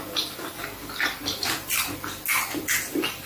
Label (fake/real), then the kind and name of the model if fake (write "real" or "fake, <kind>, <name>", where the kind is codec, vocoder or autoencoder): real